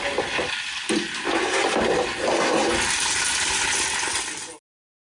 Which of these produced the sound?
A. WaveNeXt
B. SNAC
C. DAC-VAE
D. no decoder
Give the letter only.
D